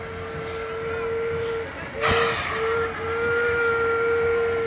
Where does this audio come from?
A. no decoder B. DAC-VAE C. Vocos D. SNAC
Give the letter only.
A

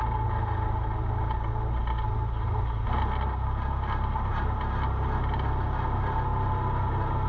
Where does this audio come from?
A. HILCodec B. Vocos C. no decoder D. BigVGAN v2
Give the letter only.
C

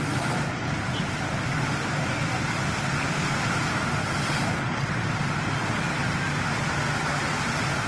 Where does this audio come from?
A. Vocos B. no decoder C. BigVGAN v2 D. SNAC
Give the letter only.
B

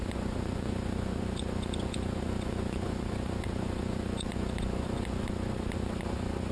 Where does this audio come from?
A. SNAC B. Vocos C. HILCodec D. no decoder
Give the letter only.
B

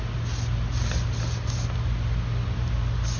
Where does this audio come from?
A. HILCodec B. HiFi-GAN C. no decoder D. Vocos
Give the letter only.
C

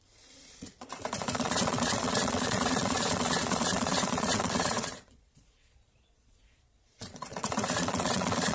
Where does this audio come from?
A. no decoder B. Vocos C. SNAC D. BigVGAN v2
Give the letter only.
B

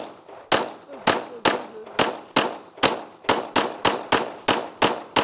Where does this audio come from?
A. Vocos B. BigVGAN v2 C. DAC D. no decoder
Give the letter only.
D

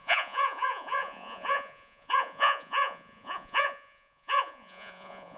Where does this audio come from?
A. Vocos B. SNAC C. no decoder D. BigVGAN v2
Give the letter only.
A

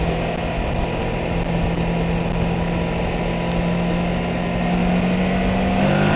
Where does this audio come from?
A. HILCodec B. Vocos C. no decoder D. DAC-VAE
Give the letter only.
C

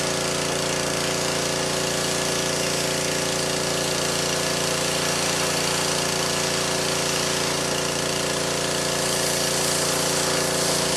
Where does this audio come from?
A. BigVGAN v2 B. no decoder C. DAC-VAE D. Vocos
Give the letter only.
B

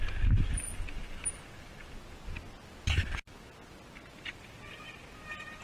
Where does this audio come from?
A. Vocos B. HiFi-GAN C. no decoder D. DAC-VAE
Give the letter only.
C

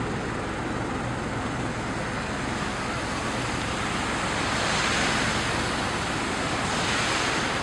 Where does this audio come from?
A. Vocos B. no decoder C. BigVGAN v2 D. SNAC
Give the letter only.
B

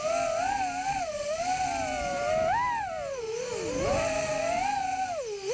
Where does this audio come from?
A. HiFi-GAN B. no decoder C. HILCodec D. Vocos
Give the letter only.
B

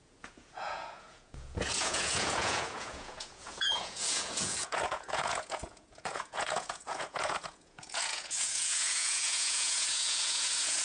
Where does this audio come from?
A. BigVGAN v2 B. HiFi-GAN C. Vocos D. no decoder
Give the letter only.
C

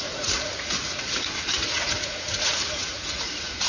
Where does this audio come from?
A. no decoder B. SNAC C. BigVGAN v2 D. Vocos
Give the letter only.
D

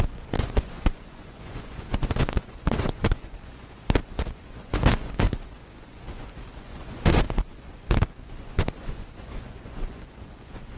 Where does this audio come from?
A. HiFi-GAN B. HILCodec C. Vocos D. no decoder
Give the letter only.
C